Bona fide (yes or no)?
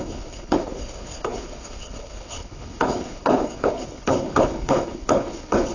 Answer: no